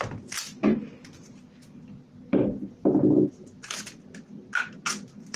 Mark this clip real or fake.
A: real